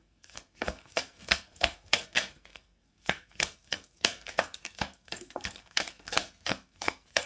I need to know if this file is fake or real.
fake